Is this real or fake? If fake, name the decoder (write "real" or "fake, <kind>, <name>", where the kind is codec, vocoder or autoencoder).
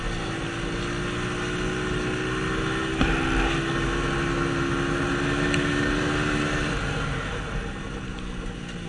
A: real